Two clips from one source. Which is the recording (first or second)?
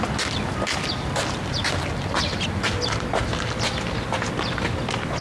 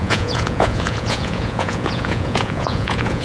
first